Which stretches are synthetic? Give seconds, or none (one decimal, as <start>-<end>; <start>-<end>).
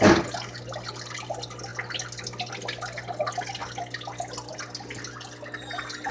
none